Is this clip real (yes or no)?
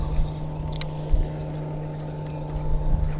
yes